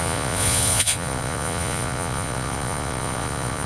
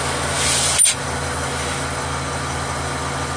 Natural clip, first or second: second